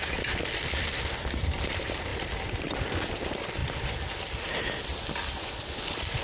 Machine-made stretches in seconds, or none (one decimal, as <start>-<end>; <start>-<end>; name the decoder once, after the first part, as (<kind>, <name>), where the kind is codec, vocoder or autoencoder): none